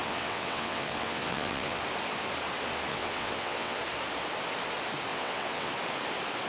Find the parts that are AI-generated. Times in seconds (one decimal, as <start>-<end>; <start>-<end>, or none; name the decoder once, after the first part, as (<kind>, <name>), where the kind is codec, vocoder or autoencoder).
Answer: 0.0-1.8 (vocoder, WaveNeXt); 2.9-3.8; 5.1-5.7